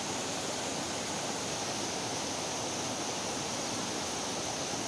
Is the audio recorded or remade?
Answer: recorded